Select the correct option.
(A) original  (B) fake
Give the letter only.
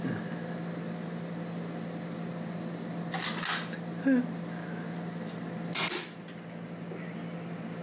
A